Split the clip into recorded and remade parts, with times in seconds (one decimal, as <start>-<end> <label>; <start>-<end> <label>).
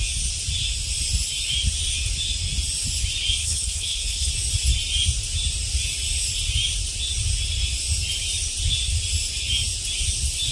0.0-3.4 recorded; 3.4-4.3 remade; 4.3-10.5 recorded